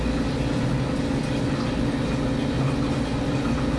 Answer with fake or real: real